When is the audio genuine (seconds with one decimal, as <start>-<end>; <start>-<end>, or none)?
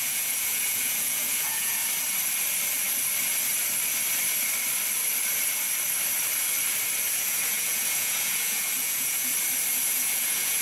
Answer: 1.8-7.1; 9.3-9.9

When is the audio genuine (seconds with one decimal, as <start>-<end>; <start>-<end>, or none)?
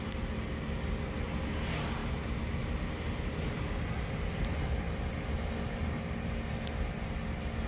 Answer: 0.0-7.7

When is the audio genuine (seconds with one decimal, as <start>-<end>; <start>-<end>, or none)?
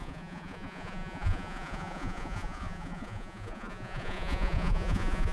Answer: none